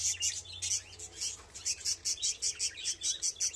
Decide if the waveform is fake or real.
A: real